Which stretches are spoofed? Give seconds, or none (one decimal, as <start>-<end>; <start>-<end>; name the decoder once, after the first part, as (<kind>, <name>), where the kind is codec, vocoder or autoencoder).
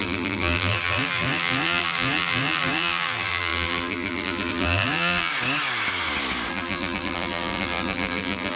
0.0-5.3 (vocoder, BigVGAN v2); 6.5-8.6